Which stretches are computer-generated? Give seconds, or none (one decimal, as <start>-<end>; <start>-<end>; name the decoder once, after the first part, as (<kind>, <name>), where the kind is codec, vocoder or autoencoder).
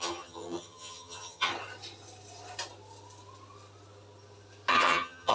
0.0-1.5 (vocoder, HiFi-GAN); 4.7-5.3